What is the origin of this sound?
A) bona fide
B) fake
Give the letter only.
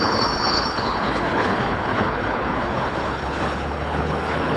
B